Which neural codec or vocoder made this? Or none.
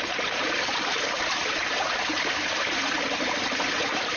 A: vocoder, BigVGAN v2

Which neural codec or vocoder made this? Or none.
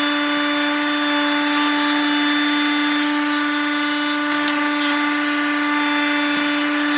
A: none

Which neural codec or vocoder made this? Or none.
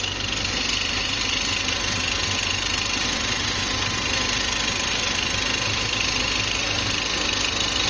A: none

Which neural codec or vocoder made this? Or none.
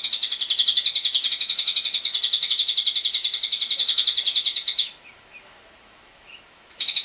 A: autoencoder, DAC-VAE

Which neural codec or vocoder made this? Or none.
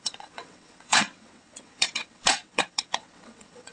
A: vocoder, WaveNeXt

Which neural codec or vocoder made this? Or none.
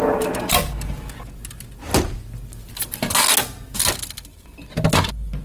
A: none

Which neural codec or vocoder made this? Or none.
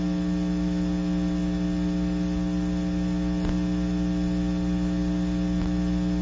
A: none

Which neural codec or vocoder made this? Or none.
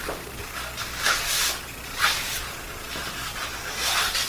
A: vocoder, BigVGAN v2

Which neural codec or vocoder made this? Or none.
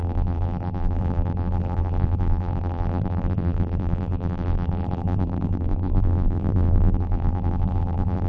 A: vocoder, BigVGAN v2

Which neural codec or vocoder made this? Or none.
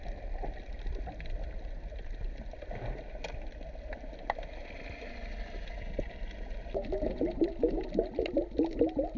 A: none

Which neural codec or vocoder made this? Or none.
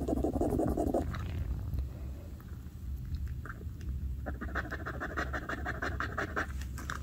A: none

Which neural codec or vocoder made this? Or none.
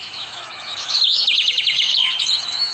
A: autoencoder, DAC-VAE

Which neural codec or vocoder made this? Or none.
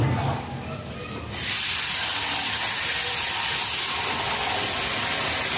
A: none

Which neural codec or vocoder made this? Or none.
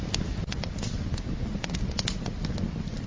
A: none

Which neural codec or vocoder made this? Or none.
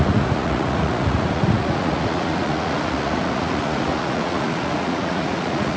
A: vocoder, Vocos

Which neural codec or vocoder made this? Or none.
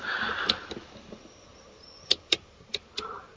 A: none